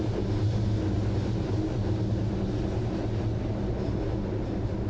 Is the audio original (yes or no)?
yes